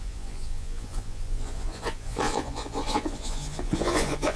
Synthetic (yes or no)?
yes